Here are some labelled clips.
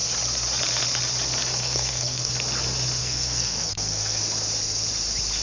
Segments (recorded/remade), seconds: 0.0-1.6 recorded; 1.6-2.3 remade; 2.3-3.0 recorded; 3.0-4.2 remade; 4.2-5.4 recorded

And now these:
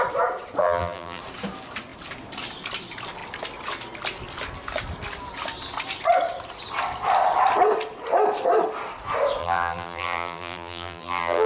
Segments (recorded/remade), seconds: 0.0-0.6 recorded; 0.6-1.2 remade; 1.2-9.4 recorded; 9.4-11.5 remade

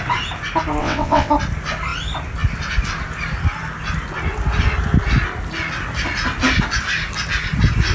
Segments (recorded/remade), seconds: 0.0-0.8 recorded; 0.8-1.3 remade; 1.3-7.9 recorded

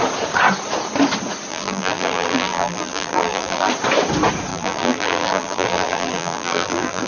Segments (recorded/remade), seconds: 0.0-1.5 recorded; 1.5-3.7 remade; 3.7-4.5 recorded; 4.5-7.1 remade

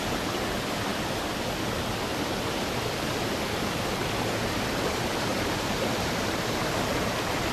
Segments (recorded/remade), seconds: 0.0-5.3 recorded; 5.3-6.7 remade; 6.7-7.5 recorded

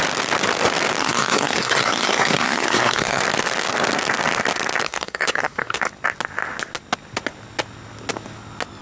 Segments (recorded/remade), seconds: 0.0-1.0 recorded; 1.0-3.2 remade; 3.2-4.8 recorded; 4.8-5.8 remade; 5.8-8.8 recorded